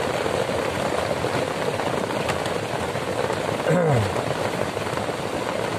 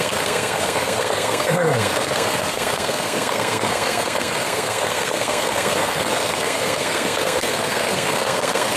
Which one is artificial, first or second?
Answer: second